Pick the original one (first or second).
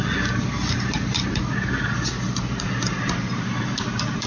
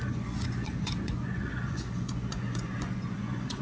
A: first